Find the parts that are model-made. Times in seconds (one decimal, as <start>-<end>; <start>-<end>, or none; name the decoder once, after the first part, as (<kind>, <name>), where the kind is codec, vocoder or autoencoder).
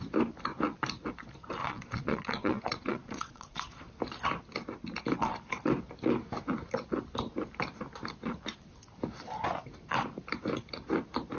1.6-3.8 (vocoder, Vocos)